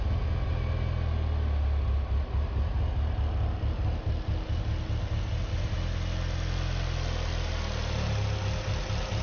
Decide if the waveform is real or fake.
real